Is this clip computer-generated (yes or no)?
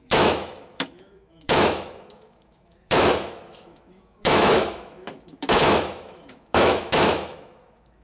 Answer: yes